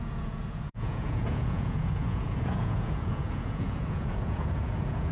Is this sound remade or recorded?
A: remade